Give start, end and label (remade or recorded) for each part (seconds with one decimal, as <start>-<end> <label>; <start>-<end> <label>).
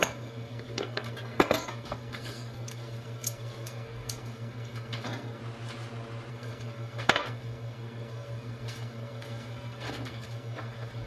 0.0-5.4 remade; 5.4-6.3 recorded; 6.3-11.1 remade